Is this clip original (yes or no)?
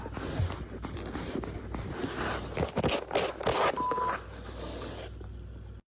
yes